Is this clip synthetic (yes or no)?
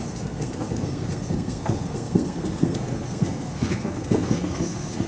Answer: yes